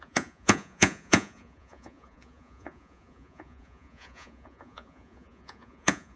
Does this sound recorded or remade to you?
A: remade